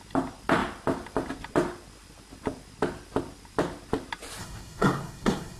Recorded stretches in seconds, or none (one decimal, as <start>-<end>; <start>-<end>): 0.0-4.4